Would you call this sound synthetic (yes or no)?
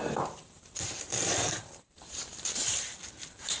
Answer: yes